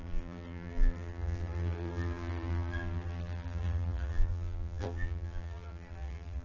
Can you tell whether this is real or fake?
fake